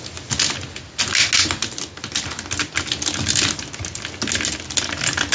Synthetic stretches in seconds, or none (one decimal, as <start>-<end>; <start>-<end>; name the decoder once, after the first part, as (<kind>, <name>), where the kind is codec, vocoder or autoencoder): none